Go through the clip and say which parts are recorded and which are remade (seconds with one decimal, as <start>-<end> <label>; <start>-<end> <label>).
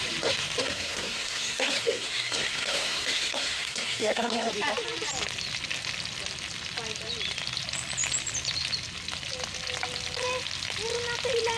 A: 0.0-0.6 recorded; 0.6-4.5 remade; 4.5-11.6 recorded